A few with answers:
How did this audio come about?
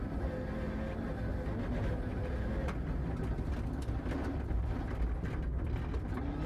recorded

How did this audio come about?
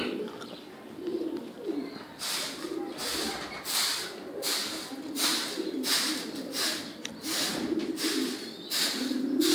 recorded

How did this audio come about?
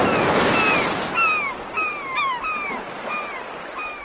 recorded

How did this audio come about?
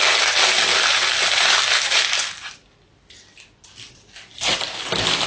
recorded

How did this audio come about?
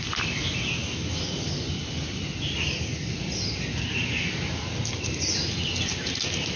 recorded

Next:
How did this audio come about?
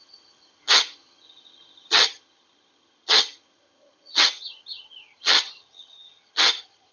remade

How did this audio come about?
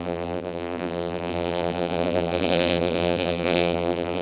remade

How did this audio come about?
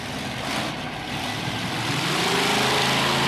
recorded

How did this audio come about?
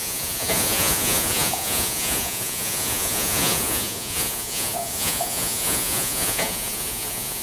remade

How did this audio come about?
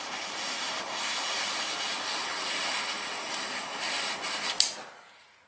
recorded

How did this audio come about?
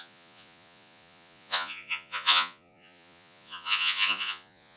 remade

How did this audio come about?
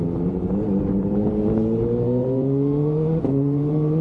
remade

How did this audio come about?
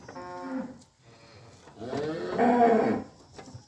recorded